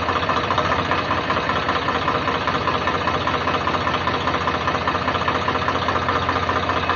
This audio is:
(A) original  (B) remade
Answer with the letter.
A